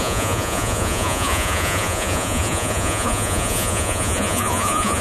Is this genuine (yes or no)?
no